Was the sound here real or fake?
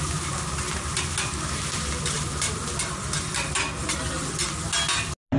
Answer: real